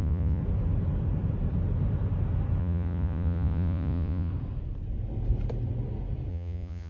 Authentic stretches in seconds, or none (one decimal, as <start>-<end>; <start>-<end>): 0.4-2.6; 4.3-6.3